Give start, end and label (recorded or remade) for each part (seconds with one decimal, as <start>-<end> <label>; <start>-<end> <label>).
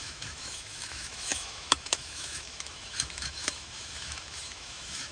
0.0-5.1 remade